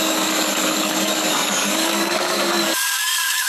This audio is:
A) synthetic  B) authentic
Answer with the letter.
A